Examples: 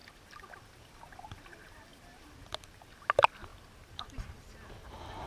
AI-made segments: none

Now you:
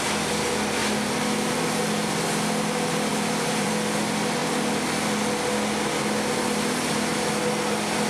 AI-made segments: 3.1-3.7 (vocoder, BigVGAN v2)

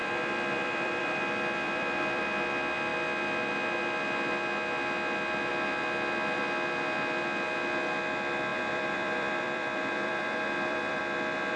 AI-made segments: 0.0-2.2 (vocoder, BigVGAN v2); 8.5-11.0

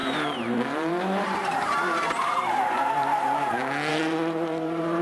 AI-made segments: 0.0-2.9 (vocoder, BigVGAN v2); 3.9-5.0

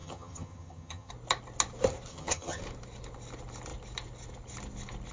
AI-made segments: 0.0-1.1 (vocoder, HiFi-GAN); 2.1-2.6

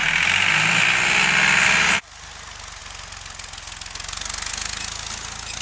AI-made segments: none